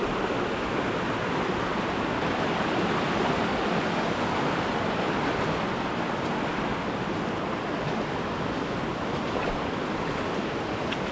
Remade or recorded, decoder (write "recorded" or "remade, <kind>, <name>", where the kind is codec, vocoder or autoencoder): recorded